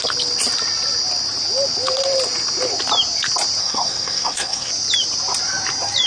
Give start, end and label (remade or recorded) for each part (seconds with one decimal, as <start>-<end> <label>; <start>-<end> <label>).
0.0-3.6 recorded; 3.6-4.7 remade; 4.7-6.1 recorded